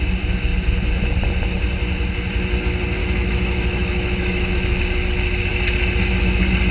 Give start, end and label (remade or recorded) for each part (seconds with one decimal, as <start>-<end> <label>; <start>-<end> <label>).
0.0-3.0 recorded; 3.0-4.8 remade; 4.8-6.7 recorded